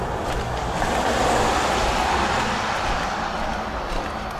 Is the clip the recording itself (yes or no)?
yes